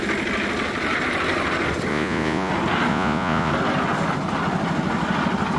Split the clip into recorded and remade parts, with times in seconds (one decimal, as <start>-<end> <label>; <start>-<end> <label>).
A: 0.0-1.9 recorded; 1.9-2.5 remade; 2.5-2.9 recorded; 2.9-3.5 remade; 3.5-5.6 recorded